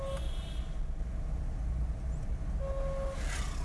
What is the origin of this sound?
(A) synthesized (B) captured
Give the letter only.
B